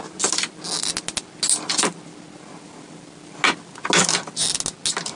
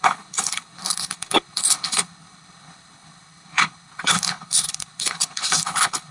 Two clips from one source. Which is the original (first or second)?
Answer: first